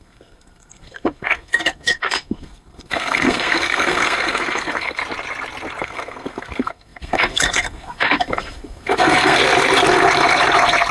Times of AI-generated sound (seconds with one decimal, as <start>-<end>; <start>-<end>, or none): 0.0-5.0; 5.8-9.4

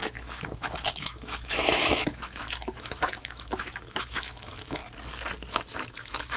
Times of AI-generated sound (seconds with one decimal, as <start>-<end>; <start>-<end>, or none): 0.0-4.8; 5.5-6.4

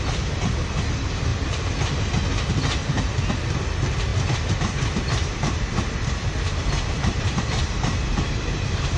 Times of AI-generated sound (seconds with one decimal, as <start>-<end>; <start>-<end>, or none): 4.1-9.0

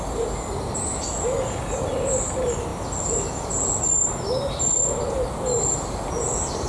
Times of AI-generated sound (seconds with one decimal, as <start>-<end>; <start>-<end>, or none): none

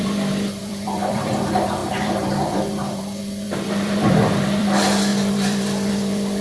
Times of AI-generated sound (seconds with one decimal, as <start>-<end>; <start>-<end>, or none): 0.0-6.4

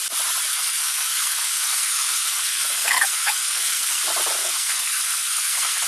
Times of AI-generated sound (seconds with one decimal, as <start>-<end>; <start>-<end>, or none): 0.5-4.0; 4.4-5.9